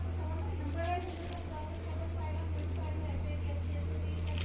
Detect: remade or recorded recorded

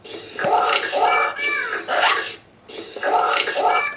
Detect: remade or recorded recorded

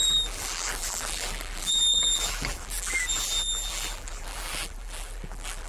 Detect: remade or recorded remade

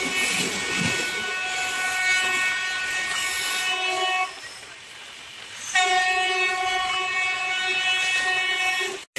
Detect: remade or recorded recorded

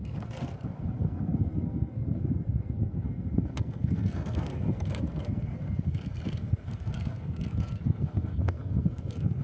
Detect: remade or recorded remade